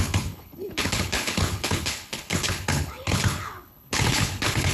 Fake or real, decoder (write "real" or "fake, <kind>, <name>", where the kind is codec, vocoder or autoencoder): fake, codec, HILCodec